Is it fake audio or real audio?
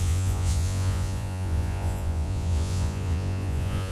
fake